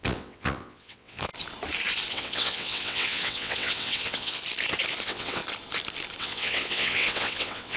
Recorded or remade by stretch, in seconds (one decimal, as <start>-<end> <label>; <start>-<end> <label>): 0.0-1.3 remade; 1.3-2.1 recorded; 2.1-4.4 remade; 4.4-5.0 recorded; 5.0-5.4 remade; 5.4-6.2 recorded; 6.2-7.8 remade